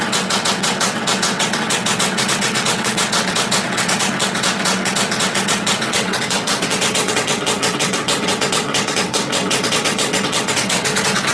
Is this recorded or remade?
remade